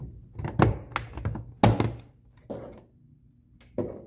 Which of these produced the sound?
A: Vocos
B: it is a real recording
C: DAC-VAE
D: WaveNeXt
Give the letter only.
B